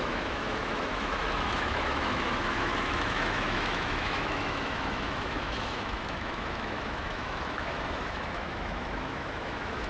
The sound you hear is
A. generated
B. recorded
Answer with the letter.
A